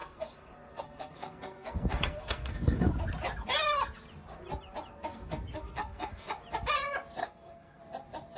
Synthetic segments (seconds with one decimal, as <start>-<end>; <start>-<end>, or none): 0.0-2.9; 4.9-6.3; 7.2-7.8